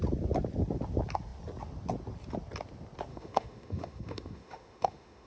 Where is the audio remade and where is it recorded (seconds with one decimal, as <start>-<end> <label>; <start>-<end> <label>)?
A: 0.0-3.1 recorded; 3.1-5.3 remade